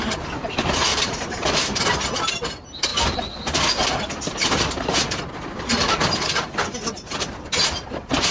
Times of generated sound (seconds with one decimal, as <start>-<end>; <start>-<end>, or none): 0.9-1.8